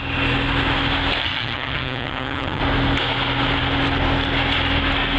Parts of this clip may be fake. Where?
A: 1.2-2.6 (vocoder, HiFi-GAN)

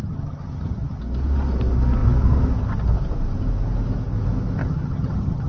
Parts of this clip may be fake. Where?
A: 0.0-1.0 (vocoder, HiFi-GAN); 4.6-5.5

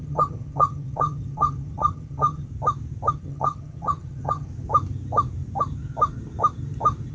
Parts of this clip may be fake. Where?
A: 0.0-2.5 (vocoder, HiFi-GAN); 3.1-4.5

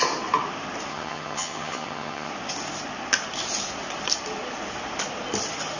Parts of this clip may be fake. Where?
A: 0.9-2.3 (vocoder, HiFi-GAN)

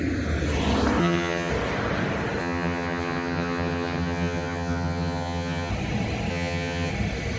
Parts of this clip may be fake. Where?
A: 1.0-1.5 (vocoder, HiFi-GAN); 2.4-5.7; 6.3-6.9

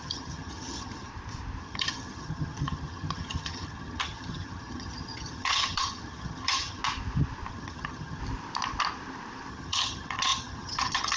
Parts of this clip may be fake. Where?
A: 0.0-1.1 (vocoder, HiFi-GAN); 1.6-6.8; 7.5-8.2; 9.5-11.2